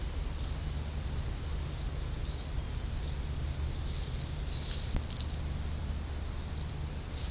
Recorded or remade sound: recorded